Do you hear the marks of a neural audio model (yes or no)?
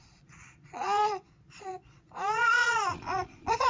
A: yes